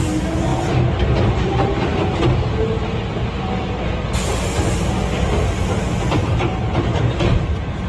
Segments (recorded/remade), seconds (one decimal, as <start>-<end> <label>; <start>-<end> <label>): 0.0-6.2 recorded; 6.2-7.4 remade; 7.4-7.9 recorded